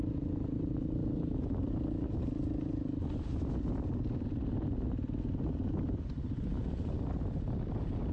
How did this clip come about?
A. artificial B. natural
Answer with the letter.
B